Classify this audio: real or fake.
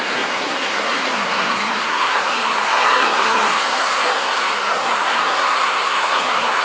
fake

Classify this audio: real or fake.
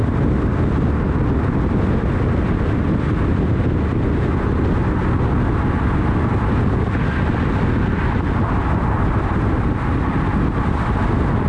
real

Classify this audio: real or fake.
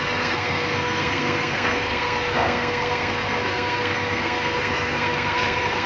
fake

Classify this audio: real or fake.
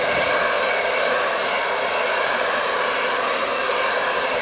fake